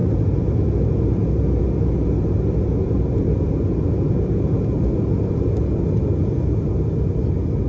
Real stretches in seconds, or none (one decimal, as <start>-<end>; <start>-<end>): 0.0-7.7